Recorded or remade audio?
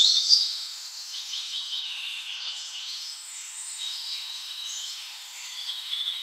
remade